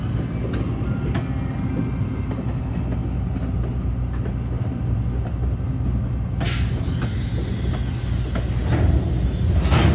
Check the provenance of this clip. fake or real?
real